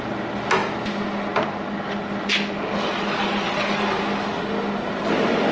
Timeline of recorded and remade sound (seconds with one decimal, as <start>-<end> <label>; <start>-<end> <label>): 0.0-5.5 recorded